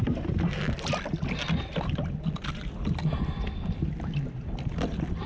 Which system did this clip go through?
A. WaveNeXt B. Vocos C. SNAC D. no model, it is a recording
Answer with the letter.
D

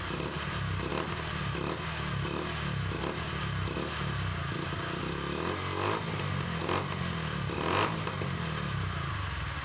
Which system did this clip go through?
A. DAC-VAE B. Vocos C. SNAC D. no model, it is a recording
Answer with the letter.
D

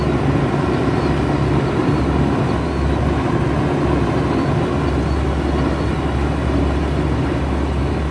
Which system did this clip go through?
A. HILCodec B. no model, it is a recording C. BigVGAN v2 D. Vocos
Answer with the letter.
B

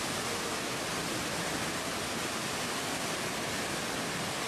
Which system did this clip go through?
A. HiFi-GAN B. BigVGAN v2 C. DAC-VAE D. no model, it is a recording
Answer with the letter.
D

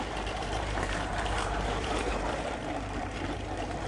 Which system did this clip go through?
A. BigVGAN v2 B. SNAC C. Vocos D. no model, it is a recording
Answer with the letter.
A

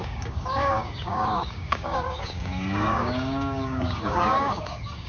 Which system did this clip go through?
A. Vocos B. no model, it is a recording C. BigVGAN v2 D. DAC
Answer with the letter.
D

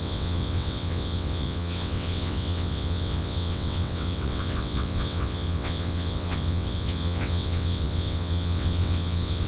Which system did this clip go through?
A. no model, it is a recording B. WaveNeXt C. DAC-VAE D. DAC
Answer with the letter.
B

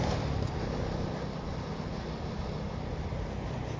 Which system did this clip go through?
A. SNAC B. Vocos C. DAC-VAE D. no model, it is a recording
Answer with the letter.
D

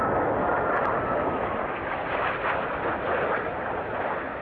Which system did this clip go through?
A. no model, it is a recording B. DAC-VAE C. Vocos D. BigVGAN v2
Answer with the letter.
A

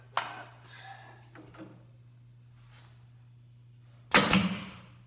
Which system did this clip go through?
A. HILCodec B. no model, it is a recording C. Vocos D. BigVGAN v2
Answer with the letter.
B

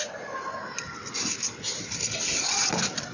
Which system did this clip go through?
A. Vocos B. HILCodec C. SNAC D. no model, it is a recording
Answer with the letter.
D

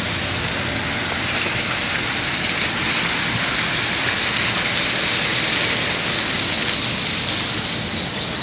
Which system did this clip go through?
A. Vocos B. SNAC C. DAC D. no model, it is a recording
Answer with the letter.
D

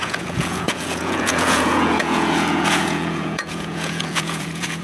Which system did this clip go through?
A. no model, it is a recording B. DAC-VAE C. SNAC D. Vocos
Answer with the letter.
D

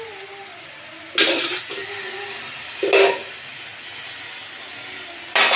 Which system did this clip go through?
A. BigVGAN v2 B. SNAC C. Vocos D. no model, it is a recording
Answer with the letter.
D